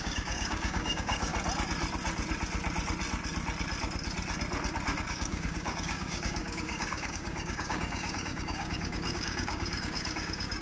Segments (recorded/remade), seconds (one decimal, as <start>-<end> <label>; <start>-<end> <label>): 0.0-1.3 remade; 1.3-5.1 recorded; 5.1-10.6 remade